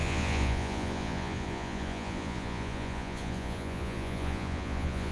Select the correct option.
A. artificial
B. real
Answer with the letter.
A